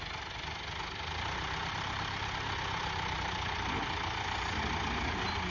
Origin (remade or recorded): recorded